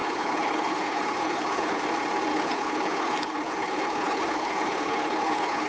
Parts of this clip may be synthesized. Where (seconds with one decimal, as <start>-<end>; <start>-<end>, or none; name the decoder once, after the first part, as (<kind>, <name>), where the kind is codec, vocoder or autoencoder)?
0.0-1.8 (codec, HILCodec); 2.3-5.7